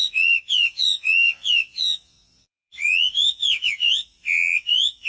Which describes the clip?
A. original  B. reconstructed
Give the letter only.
B